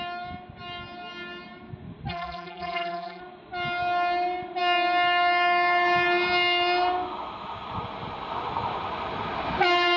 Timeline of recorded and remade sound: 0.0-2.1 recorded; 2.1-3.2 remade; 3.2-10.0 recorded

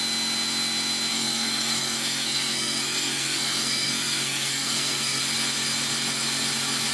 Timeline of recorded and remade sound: 0.0-1.1 recorded; 1.1-5.2 remade; 5.2-6.9 recorded

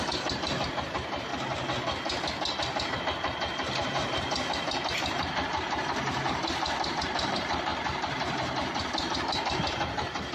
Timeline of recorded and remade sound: 0.0-1.3 remade; 1.3-3.0 recorded; 3.0-10.3 remade

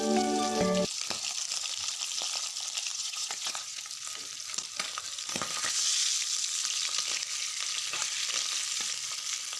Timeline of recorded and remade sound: 0.0-2.9 recorded; 2.9-3.8 remade; 3.8-9.6 recorded

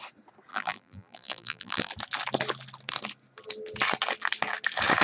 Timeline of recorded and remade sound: 0.0-0.5 recorded; 0.5-1.9 remade; 1.9-5.0 recorded

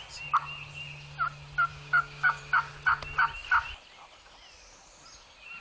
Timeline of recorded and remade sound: 0.0-1.7 recorded; 1.7-2.4 remade; 2.4-5.6 recorded

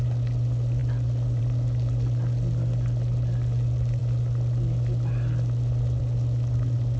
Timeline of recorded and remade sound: 0.0-7.0 recorded